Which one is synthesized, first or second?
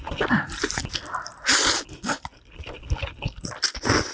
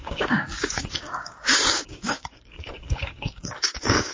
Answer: second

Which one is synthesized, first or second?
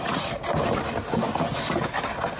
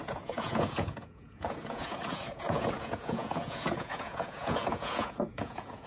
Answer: second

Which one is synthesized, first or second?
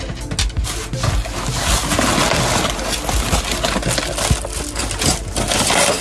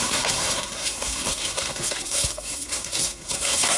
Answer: second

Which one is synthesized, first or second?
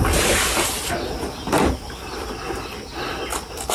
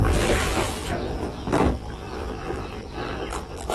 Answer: second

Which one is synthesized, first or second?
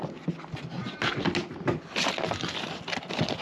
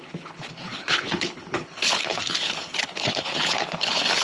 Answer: second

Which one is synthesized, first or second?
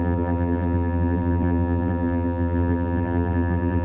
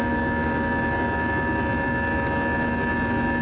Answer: first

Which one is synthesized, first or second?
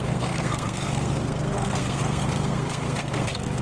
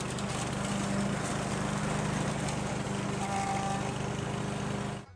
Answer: first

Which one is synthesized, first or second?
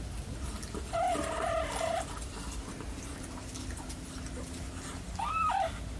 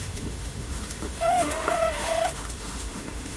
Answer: second